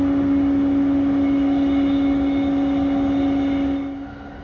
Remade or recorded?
recorded